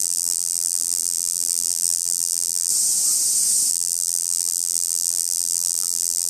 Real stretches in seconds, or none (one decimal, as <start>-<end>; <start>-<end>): 2.7-3.7